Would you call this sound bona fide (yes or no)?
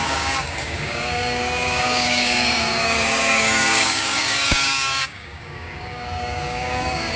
no